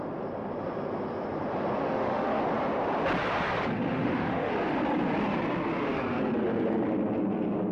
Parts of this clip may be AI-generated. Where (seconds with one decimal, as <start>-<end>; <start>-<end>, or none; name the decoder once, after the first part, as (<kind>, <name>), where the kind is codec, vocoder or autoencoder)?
1.8-2.4 (autoencoder, DAC-VAE); 3.9-4.5